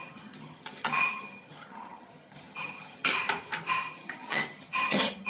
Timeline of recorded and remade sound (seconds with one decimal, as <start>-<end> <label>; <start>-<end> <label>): 0.0-3.1 remade; 3.1-3.9 recorded; 3.9-5.3 remade